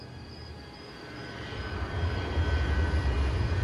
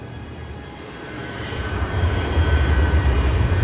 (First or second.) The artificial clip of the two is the second